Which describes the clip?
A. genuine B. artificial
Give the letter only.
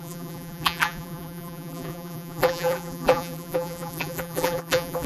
B